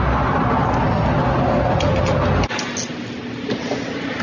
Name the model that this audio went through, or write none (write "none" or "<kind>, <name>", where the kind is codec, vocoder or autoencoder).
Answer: none